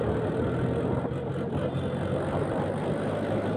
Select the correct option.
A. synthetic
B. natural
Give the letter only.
B